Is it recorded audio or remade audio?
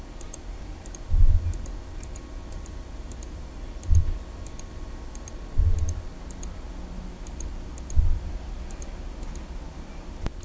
recorded